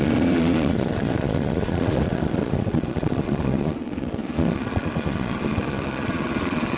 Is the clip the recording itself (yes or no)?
no